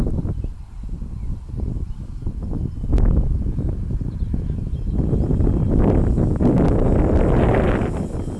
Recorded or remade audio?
recorded